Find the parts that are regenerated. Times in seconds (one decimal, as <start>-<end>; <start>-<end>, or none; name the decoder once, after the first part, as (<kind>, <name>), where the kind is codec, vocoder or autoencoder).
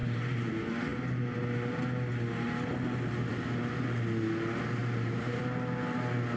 0.0-0.5 (vocoder, BigVGAN v2); 4.8-5.4